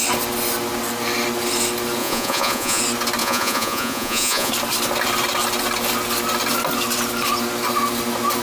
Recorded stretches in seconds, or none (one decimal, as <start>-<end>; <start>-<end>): 0.0-2.0; 2.8-3.2; 4.5-8.4